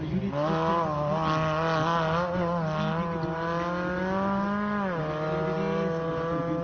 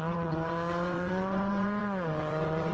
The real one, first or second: first